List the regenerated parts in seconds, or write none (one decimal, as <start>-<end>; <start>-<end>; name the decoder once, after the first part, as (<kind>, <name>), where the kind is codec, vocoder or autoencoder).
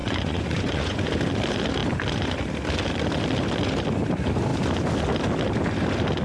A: 0.0-1.1 (vocoder, Vocos)